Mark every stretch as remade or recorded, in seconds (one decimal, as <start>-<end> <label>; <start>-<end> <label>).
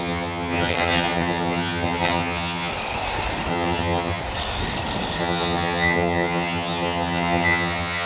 0.0-2.7 remade; 2.7-3.5 recorded; 3.5-4.2 remade; 4.2-5.2 recorded; 5.2-8.1 remade